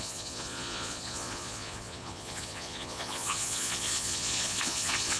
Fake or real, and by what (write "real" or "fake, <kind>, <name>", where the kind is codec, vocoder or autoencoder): fake, vocoder, Vocos